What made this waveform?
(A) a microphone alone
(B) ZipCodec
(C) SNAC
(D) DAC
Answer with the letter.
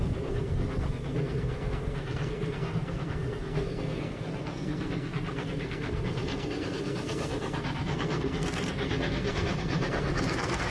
C